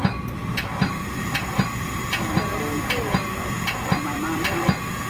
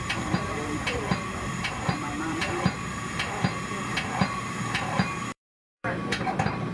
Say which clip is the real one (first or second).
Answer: first